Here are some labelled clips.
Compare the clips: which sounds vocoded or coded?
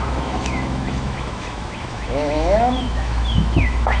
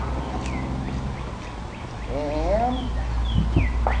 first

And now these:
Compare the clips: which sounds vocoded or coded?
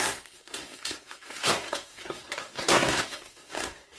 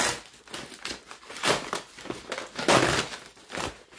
first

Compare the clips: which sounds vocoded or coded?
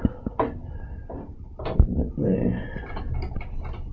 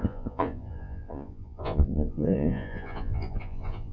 second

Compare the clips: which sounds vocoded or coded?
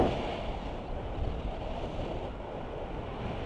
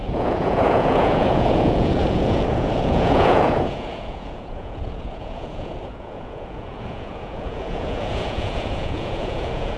second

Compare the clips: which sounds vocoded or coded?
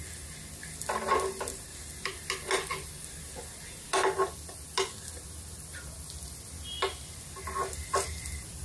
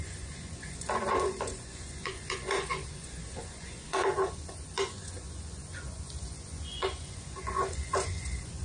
second